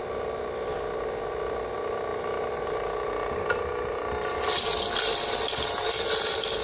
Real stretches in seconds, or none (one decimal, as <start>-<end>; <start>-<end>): 0.0-6.6